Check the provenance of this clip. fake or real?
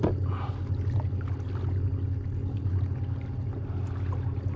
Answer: real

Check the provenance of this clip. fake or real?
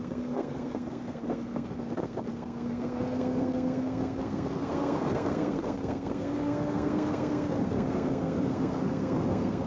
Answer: fake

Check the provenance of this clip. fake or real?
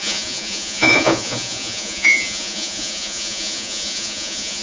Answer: fake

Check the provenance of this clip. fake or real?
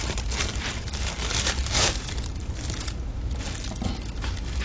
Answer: fake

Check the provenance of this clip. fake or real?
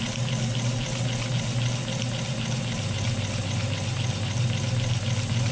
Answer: real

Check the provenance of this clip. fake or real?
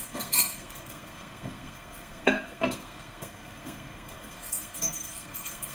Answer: fake